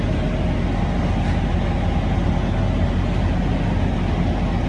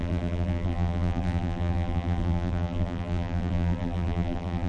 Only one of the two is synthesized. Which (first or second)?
second